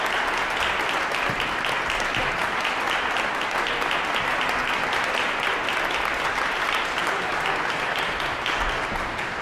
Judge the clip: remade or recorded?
recorded